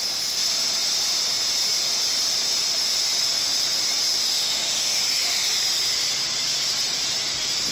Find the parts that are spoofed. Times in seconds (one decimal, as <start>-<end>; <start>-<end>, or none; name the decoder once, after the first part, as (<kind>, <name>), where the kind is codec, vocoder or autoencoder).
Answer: 4.3-5.0 (autoencoder, DAC-VAE)